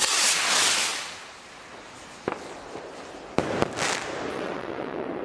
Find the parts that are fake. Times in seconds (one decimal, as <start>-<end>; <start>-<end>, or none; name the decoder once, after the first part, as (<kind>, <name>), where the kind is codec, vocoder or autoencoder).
4.3-5.2 (vocoder, WaveNeXt)